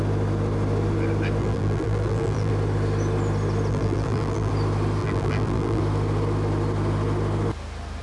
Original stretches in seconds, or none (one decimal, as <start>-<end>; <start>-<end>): 0.0-1.4; 2.5-3.7; 4.5-5.0; 5.8-8.0

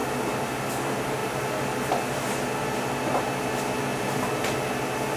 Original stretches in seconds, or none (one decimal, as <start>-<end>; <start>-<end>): 0.0-5.2

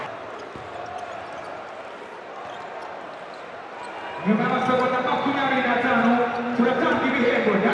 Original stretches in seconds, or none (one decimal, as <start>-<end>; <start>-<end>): 0.0-7.7

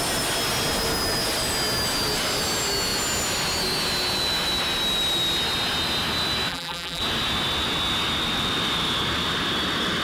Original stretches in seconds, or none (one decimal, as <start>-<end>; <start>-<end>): 0.0-6.5; 7.0-10.0